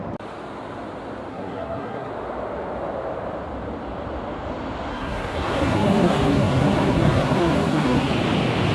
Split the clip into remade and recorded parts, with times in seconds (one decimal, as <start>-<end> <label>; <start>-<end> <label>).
0.0-1.3 recorded; 1.3-2.1 remade; 2.1-4.9 recorded; 4.9-8.1 remade; 8.1-8.7 recorded